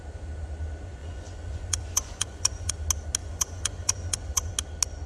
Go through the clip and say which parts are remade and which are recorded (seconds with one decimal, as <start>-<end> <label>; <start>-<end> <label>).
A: 0.0-1.0 recorded; 1.0-2.7 remade; 2.7-3.2 recorded; 3.2-4.5 remade; 4.5-5.1 recorded